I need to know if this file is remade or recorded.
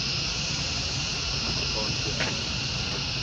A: recorded